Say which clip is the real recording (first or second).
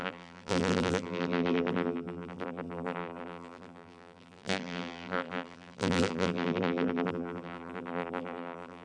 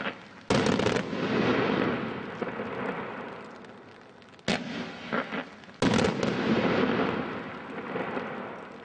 second